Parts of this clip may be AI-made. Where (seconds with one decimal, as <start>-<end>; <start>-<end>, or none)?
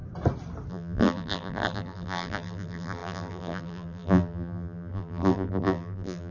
0.7-6.3